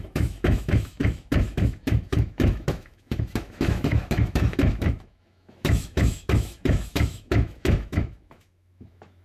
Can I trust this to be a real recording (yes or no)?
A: no